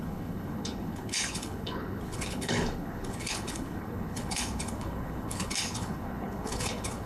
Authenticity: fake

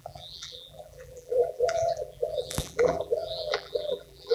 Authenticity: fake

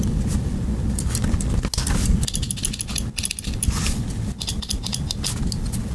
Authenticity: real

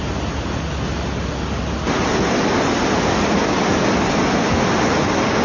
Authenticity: real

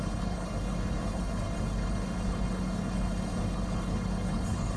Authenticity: fake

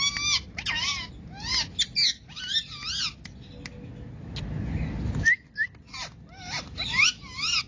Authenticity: real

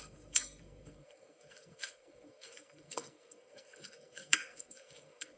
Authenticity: fake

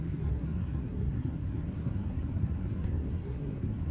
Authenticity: fake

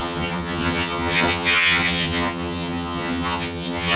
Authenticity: fake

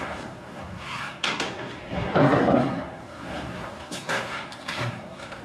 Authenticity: fake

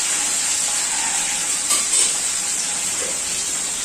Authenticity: real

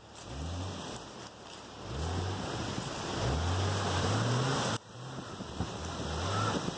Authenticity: real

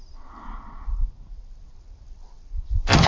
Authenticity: real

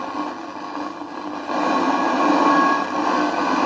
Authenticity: real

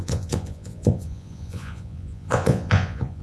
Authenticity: fake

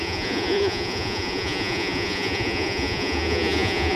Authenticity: fake